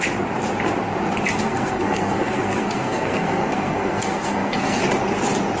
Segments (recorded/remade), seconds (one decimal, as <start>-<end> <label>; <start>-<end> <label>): 0.0-1.4 recorded; 1.4-4.8 remade; 4.8-5.6 recorded